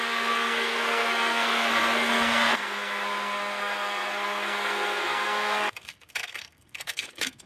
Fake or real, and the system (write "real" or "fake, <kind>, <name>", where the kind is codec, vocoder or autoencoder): fake, codec, SNAC